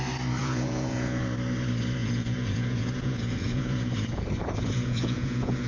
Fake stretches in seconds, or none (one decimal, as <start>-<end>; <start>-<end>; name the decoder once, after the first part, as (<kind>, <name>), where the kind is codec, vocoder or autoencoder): 0.4-1.2 (vocoder, Vocos); 2.0-5.7